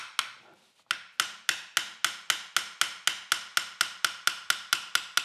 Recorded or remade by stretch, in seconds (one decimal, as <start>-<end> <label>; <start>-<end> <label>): 0.0-5.2 recorded